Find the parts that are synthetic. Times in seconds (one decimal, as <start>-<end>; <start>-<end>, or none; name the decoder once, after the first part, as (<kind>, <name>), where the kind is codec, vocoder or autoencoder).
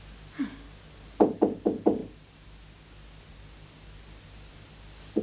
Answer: none